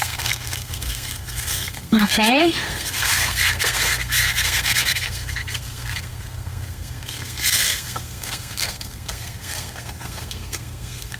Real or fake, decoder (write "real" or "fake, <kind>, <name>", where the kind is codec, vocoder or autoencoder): fake, codec, SNAC